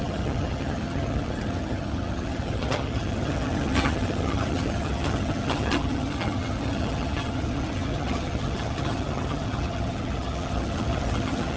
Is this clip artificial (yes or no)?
yes